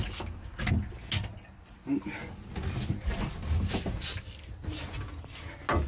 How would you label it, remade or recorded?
recorded